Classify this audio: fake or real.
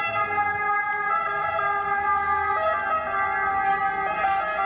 real